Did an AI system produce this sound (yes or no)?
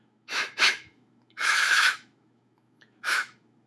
yes